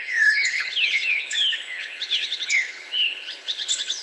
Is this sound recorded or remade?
remade